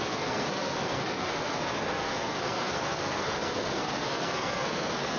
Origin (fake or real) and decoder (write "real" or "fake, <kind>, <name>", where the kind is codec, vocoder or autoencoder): fake, codec, SNAC